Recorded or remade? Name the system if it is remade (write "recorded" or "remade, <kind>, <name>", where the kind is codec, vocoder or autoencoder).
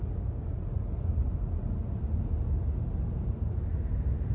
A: recorded